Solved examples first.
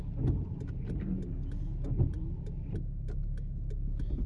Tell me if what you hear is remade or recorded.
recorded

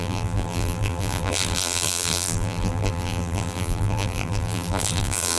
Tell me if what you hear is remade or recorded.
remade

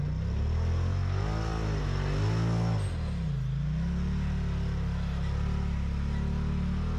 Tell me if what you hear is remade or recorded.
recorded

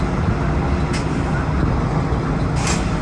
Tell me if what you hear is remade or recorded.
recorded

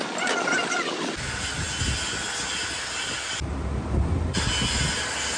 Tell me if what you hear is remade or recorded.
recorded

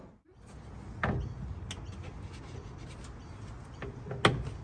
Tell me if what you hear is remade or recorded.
recorded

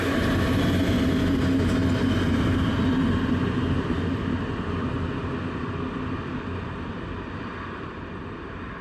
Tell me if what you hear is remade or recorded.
recorded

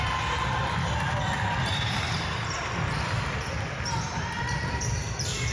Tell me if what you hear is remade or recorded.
remade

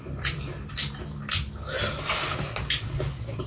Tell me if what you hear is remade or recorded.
recorded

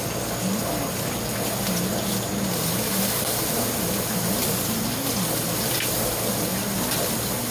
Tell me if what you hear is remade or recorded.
recorded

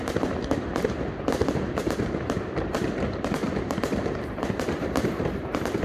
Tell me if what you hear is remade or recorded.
remade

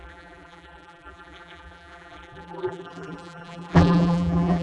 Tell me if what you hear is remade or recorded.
remade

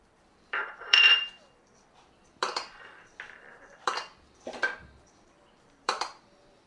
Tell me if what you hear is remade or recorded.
remade